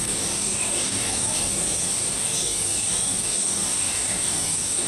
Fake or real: fake